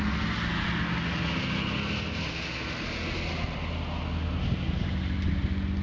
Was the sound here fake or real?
real